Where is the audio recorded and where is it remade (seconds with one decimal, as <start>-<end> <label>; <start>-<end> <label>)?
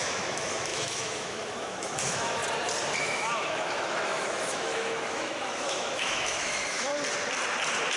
0.0-2.4 remade; 2.4-3.0 recorded; 3.0-6.9 remade; 6.9-8.0 recorded